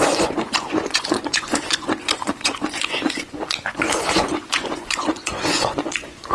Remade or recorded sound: remade